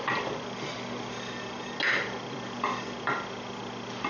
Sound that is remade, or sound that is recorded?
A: recorded